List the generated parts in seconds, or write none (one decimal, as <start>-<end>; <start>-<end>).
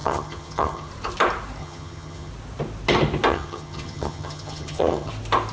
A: 0.0-0.9; 1.6-2.3; 3.3-5.1